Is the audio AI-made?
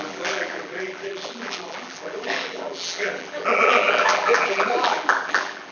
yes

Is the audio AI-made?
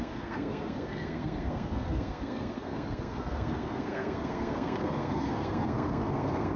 yes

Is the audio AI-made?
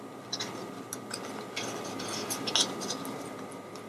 no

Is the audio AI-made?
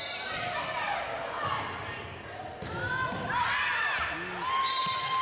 no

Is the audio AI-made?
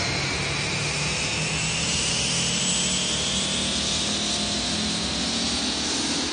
no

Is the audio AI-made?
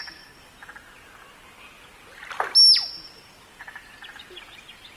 no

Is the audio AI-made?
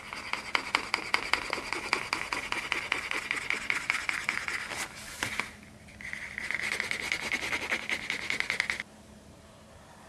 no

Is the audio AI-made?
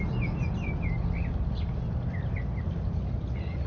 no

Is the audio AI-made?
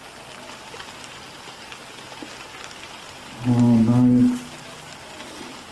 no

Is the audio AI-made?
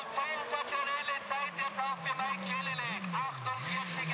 no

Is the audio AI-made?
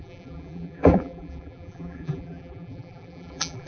yes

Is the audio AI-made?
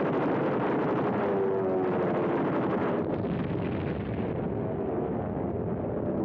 no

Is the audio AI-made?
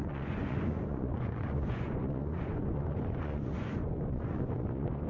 yes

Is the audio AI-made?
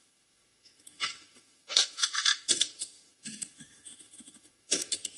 yes